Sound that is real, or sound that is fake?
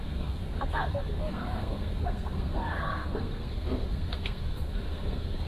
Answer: fake